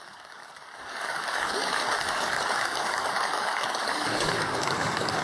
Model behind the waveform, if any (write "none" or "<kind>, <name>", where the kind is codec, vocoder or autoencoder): codec, DAC